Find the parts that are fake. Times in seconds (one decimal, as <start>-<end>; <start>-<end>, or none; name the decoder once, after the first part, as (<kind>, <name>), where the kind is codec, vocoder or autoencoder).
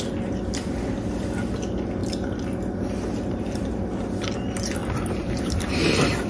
0.0-2.0 (vocoder, BigVGAN v2); 3.3-6.3